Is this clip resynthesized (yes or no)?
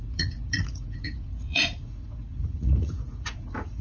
yes